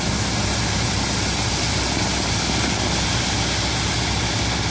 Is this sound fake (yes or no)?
no